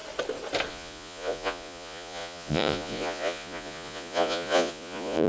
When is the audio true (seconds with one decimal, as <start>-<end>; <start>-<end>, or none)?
0.0-0.7